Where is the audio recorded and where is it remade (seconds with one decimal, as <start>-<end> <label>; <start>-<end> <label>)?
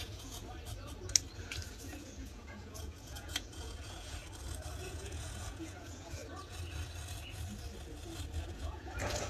0.0-0.4 remade; 0.4-1.8 recorded; 1.8-4.2 remade; 4.2-4.9 recorded; 4.9-6.2 remade; 6.2-8.5 recorded; 8.5-9.3 remade